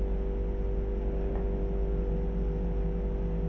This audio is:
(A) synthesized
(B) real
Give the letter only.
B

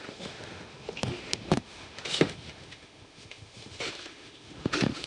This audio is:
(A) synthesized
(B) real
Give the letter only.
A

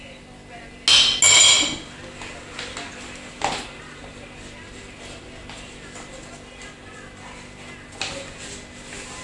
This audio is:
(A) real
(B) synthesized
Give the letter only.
A